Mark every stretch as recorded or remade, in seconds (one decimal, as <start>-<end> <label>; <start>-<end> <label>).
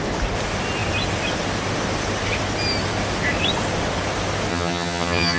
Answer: 0.0-4.5 recorded; 4.5-5.4 remade